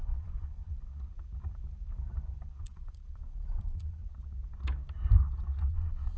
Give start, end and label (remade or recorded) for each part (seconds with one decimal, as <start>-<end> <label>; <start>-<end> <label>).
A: 0.0-0.6 remade; 0.6-2.6 recorded; 2.6-4.0 remade; 4.0-5.7 recorded; 5.7-6.2 remade